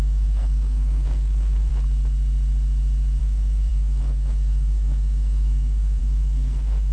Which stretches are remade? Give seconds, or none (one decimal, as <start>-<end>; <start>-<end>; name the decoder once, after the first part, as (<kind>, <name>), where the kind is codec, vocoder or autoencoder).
0.0-1.7 (codec, SNAC); 3.2-6.9